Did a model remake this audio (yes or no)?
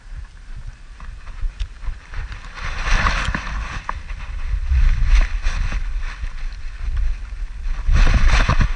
no